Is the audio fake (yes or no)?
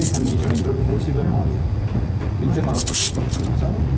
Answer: yes